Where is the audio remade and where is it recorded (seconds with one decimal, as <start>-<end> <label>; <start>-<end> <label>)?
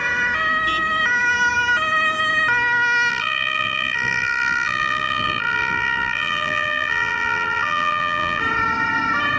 0.0-3.1 recorded; 3.1-8.4 remade; 8.4-9.4 recorded